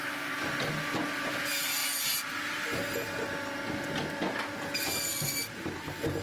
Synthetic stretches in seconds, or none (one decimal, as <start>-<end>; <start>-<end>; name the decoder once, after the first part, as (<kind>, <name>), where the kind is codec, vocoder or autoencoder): none